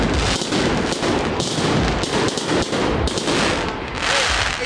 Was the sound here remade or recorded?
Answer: recorded